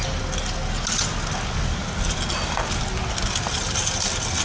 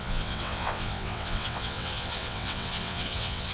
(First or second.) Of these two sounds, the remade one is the second